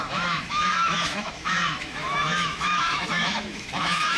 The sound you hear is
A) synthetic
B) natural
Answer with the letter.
A